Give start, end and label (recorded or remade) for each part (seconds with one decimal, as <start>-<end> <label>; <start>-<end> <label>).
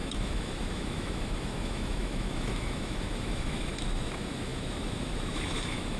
0.0-6.0 remade